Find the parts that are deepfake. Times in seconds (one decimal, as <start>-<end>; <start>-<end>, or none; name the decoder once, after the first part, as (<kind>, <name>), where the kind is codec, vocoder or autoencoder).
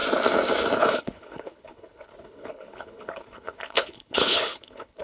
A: 0.8-5.0 (codec, HILCodec)